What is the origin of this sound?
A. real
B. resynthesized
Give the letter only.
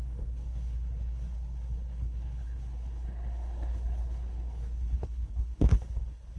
B